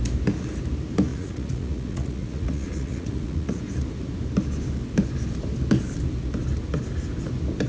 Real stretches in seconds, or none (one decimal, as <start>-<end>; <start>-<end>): 0.0-1.1; 3.6-7.7